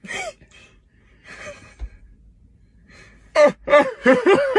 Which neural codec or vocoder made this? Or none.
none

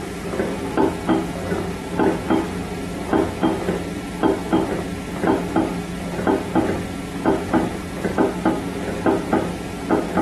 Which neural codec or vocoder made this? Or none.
none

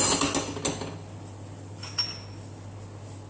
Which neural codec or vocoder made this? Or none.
none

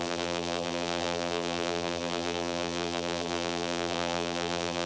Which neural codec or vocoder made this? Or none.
vocoder, BigVGAN v2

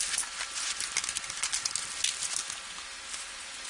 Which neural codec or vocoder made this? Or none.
none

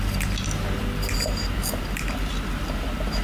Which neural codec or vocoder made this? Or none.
none